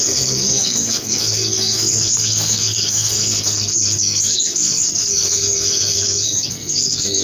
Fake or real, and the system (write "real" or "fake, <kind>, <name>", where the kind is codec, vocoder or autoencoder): fake, codec, SNAC